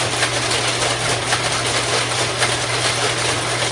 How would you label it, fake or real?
real